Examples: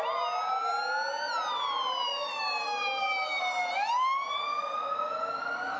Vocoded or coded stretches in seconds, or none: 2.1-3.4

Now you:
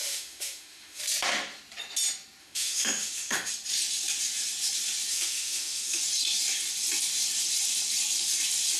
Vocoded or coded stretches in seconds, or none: 0.0-1.0; 2.4-3.5; 5.1-6.0

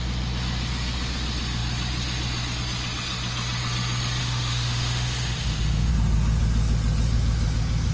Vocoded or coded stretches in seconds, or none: 4.2-5.9